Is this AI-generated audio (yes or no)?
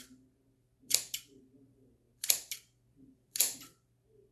no